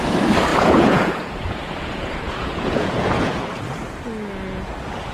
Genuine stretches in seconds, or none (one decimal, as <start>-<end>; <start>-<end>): 0.0-0.5; 3.6-5.1